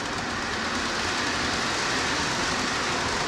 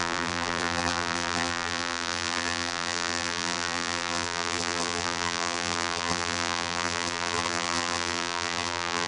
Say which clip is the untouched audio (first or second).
first